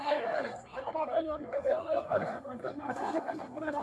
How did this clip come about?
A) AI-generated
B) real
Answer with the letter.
A